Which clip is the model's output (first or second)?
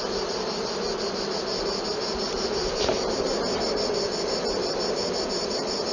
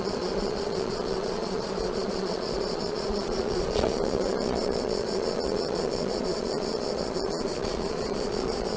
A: second